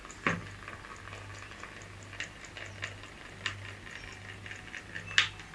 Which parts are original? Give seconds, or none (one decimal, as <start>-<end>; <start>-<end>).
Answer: 0.0-5.5

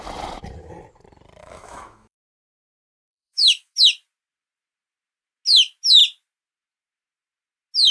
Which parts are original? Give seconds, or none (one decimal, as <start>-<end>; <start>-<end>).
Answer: 0.0-1.4; 3.8-7.9

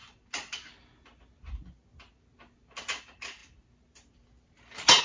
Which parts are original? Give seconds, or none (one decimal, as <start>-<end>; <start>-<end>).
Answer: 0.0-5.0